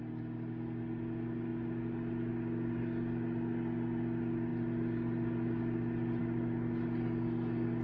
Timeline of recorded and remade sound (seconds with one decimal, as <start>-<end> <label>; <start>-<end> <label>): 0.0-7.8 recorded